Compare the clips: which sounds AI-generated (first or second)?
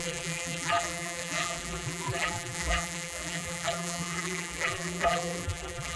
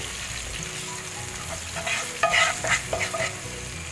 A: first